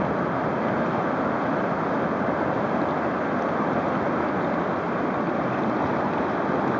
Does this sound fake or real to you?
real